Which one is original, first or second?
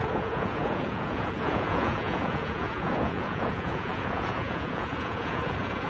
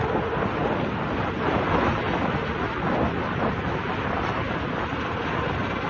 second